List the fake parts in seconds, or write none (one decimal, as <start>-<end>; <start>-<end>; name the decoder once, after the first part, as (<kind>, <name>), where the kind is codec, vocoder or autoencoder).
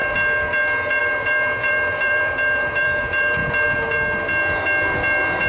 1.0-3.4 (vocoder, BigVGAN v2)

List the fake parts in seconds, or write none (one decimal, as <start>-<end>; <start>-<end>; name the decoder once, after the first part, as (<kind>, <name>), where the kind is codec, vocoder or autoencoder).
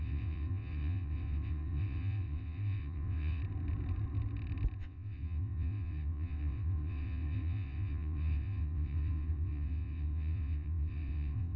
0.0-3.4 (vocoder, WaveNeXt); 4.8-11.6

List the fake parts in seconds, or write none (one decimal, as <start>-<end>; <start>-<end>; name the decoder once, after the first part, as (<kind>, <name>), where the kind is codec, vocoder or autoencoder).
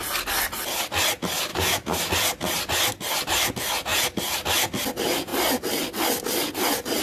1.5-2.1 (autoencoder, DAC-VAE)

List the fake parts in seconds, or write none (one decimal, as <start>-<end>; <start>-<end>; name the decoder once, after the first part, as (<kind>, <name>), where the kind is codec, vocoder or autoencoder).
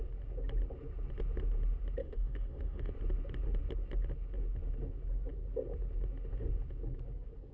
2.0-2.9 (autoencoder, DAC-VAE)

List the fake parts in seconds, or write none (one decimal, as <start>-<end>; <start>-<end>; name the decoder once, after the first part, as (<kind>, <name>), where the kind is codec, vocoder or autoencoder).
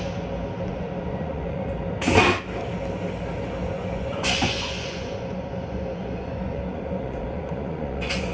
0.7-1.7 (vocoder, Vocos); 3.6-8.3